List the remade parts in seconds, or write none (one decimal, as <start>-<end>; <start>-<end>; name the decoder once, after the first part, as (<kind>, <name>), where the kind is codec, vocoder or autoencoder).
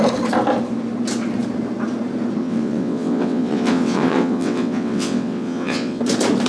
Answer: 2.4-6.0 (vocoder, WaveNeXt)